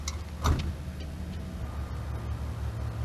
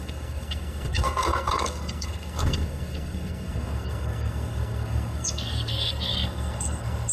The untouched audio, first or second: first